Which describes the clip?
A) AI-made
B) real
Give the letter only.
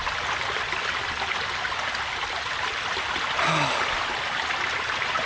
B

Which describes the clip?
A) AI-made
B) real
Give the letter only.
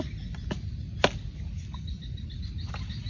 B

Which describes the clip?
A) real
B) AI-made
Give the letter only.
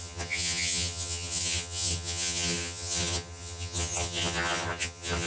B